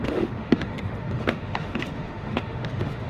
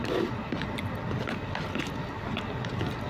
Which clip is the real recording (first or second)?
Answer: second